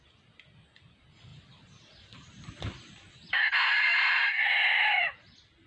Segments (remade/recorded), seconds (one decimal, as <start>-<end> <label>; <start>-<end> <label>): 0.0-1.3 recorded; 1.3-3.5 remade; 3.5-3.9 recorded; 3.9-4.7 remade; 4.7-5.7 recorded